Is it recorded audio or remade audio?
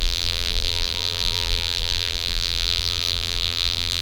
remade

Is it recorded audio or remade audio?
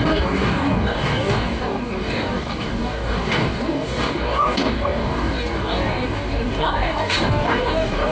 remade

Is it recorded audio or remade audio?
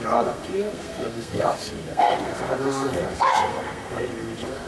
remade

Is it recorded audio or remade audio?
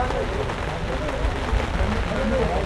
recorded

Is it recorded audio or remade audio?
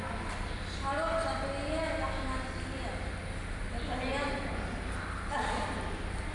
recorded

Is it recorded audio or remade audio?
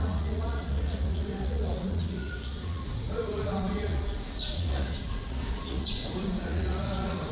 remade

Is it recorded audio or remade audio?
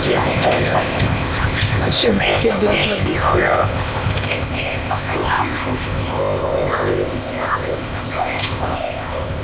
remade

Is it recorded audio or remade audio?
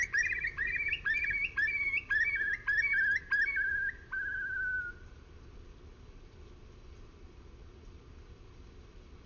recorded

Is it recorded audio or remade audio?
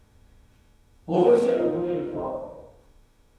remade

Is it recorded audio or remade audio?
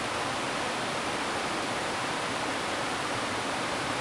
remade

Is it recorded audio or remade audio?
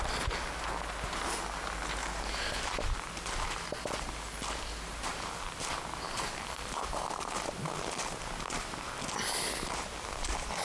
recorded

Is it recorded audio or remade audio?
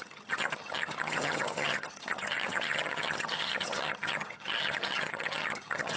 remade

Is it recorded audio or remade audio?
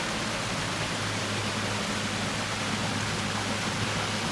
recorded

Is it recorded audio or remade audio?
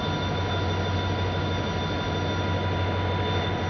recorded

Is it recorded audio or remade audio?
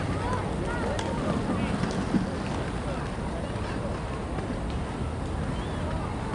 recorded